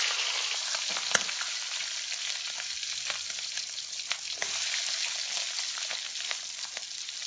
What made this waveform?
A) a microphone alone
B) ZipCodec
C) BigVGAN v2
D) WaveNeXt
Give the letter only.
A